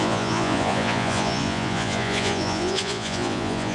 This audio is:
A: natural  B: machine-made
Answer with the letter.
B